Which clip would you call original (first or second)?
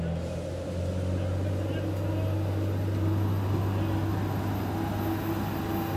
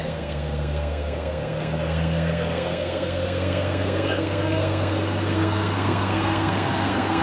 first